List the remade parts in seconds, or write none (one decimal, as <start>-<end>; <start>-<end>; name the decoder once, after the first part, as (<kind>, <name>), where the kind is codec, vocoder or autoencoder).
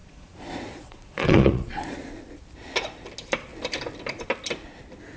0.0-2.1 (vocoder, Vocos)